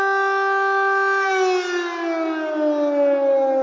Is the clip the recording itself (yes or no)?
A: yes